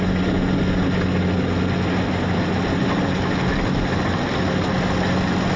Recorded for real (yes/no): yes